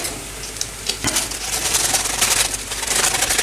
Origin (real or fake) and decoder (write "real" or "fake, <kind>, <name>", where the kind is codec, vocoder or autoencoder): fake, vocoder, BigVGAN v2